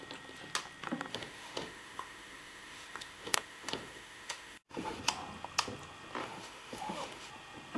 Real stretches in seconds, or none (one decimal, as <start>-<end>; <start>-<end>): 0.0-1.1; 5.0-6.2; 7.3-7.8